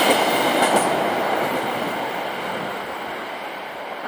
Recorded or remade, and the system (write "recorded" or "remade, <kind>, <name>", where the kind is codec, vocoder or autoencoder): recorded